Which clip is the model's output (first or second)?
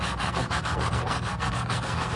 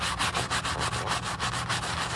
first